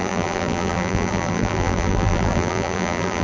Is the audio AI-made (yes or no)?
yes